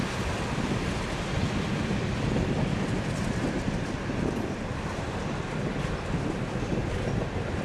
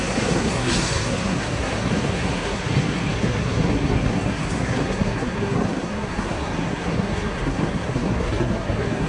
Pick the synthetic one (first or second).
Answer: second